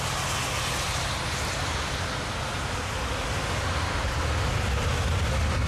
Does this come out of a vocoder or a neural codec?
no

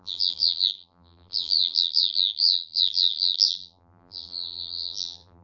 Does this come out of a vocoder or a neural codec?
yes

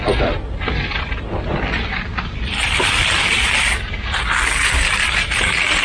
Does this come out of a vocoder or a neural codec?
no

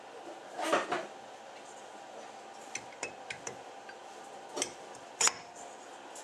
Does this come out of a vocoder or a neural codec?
no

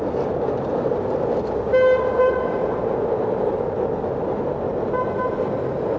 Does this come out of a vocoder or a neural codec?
no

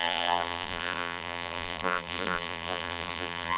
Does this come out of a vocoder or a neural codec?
yes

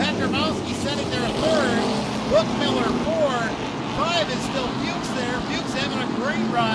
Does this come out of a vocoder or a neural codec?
no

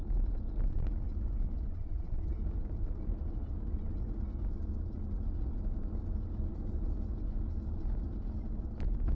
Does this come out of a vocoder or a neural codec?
no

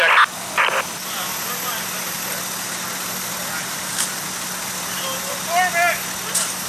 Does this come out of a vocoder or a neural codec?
no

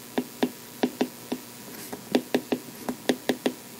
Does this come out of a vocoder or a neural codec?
no